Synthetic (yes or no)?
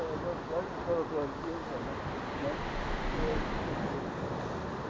no